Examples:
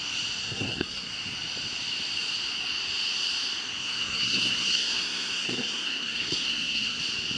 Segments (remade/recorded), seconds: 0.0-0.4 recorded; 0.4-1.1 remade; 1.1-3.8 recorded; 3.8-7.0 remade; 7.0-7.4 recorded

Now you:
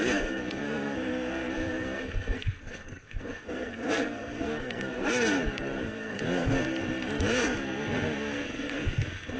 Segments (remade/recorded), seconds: 0.0-9.4 remade

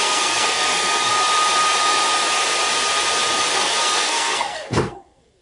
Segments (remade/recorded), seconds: 0.0-1.1 remade; 1.1-3.5 recorded; 3.5-5.4 remade

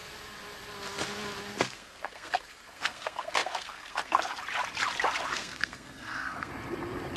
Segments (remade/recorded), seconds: 0.0-1.6 recorded; 1.6-4.4 remade; 4.4-5.3 recorded; 5.3-6.5 remade; 6.5-7.2 recorded